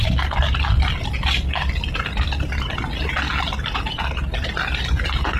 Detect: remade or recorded recorded